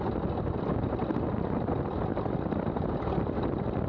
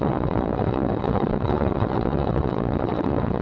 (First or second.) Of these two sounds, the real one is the first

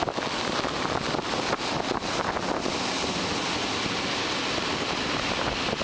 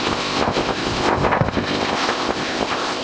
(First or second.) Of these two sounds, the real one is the first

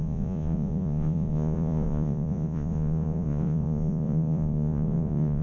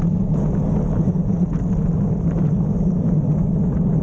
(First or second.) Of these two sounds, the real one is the second